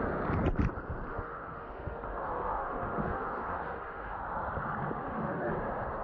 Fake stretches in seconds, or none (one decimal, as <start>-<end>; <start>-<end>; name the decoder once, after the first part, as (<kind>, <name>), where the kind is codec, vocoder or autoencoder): 1.1-4.2 (autoencoder, DAC-VAE); 5.0-5.5